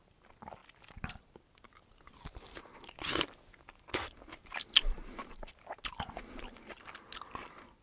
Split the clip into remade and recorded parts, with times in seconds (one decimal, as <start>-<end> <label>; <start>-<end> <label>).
0.0-7.8 recorded